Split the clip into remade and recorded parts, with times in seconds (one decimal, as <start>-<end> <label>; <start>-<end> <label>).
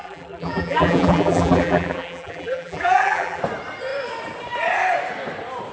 0.0-3.4 remade; 3.4-5.7 recorded